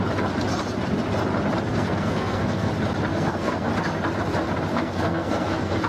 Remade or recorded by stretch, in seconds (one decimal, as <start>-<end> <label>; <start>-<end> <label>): 0.0-1.7 recorded; 1.7-2.7 remade; 2.7-3.1 recorded; 3.1-3.7 remade; 3.7-4.7 recorded; 4.7-5.9 remade